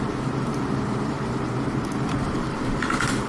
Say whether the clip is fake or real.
fake